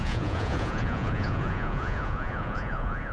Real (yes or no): no